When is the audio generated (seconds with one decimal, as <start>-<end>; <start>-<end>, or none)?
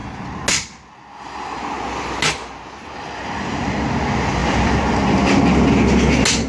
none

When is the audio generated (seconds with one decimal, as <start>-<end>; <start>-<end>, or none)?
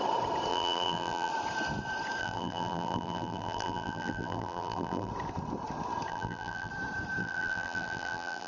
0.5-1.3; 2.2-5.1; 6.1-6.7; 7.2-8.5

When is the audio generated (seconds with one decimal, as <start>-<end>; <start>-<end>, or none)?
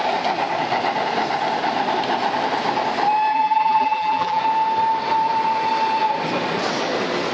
3.3-4.4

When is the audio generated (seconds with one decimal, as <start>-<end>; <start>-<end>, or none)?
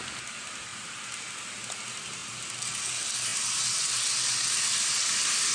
none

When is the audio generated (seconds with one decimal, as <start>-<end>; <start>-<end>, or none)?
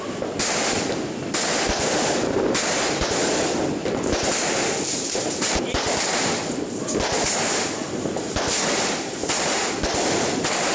3.8-5.5